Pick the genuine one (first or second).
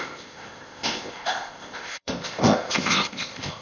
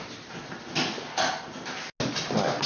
second